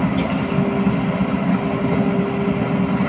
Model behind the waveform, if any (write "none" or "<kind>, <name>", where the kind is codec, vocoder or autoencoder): none